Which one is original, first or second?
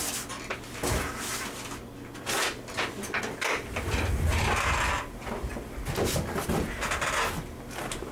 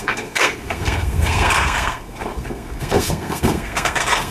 first